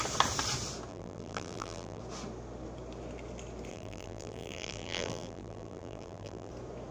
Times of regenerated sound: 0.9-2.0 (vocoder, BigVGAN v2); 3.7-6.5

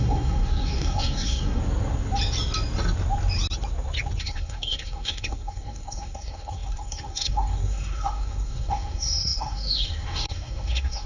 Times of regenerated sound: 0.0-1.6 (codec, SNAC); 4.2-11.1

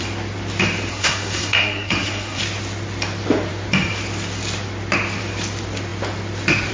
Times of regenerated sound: 0.9-2.4 (codec, SNAC)